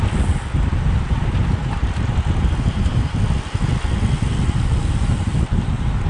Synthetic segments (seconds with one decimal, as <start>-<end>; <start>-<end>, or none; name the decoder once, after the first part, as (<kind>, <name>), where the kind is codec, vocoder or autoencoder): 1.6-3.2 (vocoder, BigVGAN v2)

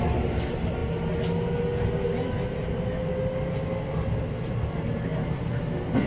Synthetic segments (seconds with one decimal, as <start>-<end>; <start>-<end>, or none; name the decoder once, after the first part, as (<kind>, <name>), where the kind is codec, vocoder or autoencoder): none

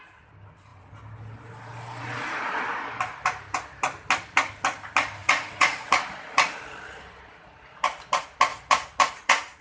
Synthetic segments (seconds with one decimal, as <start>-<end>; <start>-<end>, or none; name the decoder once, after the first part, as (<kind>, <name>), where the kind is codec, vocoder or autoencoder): 5.2-5.9 (vocoder, Vocos); 8.5-9.6

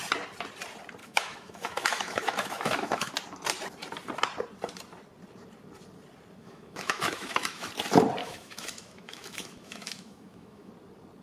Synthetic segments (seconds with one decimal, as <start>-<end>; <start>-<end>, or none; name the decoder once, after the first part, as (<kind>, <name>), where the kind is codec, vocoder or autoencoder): 1.0-3.1 (autoencoder, DAC-VAE); 6.4-7.7; 8.2-10.7

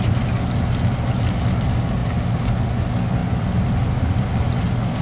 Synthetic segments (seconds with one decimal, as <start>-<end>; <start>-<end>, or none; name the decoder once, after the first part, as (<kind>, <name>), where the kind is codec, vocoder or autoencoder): none

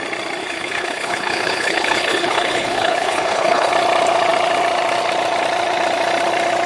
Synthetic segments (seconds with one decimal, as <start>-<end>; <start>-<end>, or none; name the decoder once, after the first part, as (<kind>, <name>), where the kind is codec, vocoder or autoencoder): 0.4-3.7 (codec, HILCodec)